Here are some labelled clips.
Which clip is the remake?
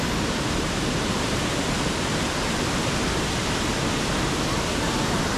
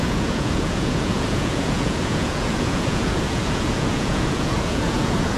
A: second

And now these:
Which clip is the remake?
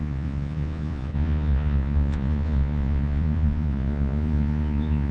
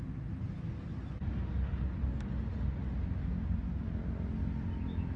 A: first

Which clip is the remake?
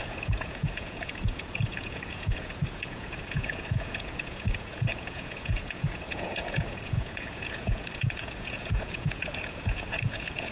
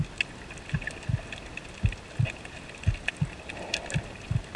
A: first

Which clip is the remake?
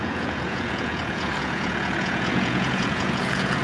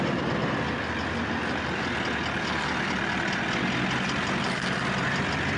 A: first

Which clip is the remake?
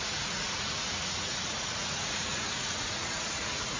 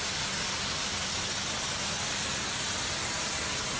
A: first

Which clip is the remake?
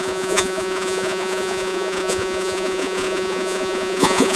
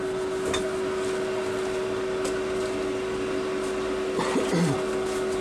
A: first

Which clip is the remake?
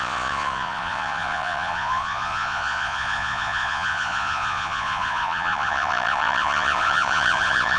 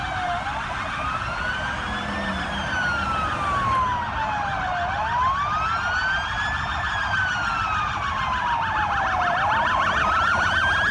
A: first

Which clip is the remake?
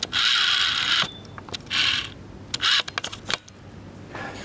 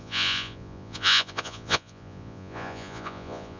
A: second